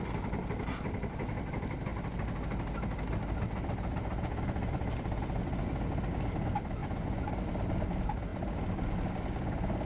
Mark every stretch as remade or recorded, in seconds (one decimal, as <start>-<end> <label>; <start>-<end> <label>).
0.0-6.8 recorded; 6.8-7.3 remade; 7.3-9.9 recorded

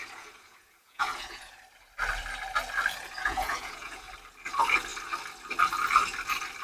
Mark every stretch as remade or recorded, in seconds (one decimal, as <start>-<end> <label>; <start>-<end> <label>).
0.0-1.5 remade; 1.5-3.2 recorded; 3.2-4.1 remade; 4.1-6.6 recorded

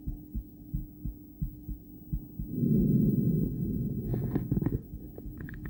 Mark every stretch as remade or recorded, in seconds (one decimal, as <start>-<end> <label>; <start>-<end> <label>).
0.0-0.8 remade; 0.8-1.4 recorded; 1.4-1.9 remade; 1.9-2.5 recorded; 2.5-4.1 remade; 4.1-4.6 recorded; 4.6-5.7 remade

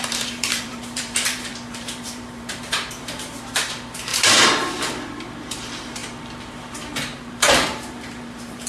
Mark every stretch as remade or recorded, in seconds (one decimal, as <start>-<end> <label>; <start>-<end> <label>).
0.0-8.7 remade

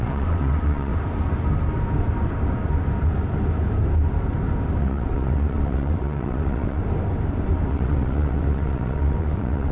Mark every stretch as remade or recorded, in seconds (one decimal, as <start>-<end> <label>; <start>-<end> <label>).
0.0-0.9 remade; 0.9-4.8 recorded; 4.8-6.8 remade; 6.8-7.7 recorded; 7.7-9.7 remade